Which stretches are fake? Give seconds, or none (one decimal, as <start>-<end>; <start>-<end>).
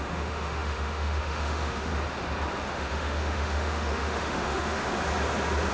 0.0-1.9; 2.7-4.8